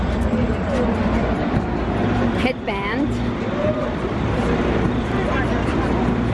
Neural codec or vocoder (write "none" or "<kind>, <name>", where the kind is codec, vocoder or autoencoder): vocoder, BigVGAN v2